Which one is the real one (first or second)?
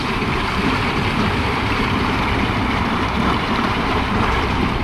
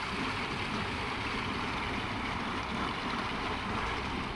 second